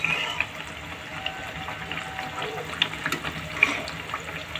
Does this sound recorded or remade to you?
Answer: recorded